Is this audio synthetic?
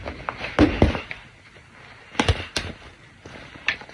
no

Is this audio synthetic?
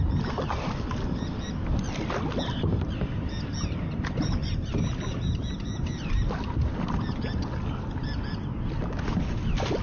no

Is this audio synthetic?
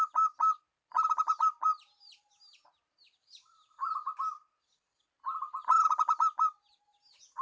no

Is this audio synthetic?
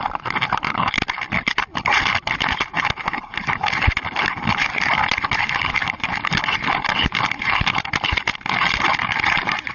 no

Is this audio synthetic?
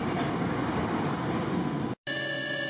no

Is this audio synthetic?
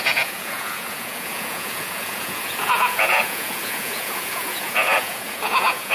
yes